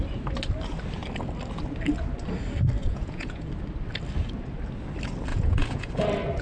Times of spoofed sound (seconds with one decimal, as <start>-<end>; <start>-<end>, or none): 2.8-3.5; 5.3-5.9

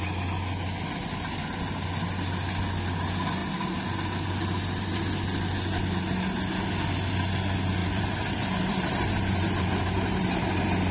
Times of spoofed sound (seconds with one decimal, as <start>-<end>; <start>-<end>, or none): 7.8-10.4

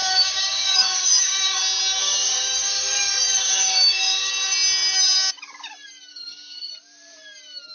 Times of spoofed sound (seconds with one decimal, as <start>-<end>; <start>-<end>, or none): 0.0-1.6; 2.0-4.3; 6.1-6.7

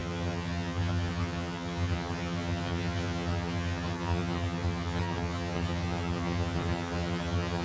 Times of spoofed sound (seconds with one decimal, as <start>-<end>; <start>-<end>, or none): 0.0-7.6

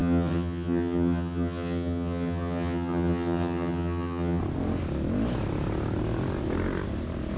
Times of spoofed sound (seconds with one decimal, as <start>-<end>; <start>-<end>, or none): 0.0-4.4

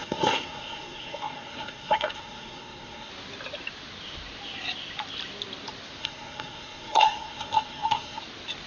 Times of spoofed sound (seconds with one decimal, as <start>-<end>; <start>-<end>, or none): 0.0-3.1; 6.0-8.2

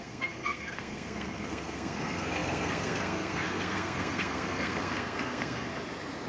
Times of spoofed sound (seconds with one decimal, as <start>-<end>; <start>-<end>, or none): 0.0-5.7